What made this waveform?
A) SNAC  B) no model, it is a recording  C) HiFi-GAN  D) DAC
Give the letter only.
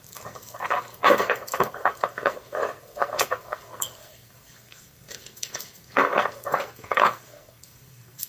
A